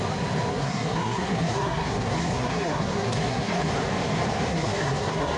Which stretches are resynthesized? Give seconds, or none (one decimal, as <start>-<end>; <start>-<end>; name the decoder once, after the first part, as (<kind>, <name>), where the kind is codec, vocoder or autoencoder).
0.5-3.7 (codec, SNAC); 4.5-5.4